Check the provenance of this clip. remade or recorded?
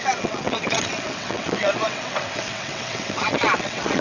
remade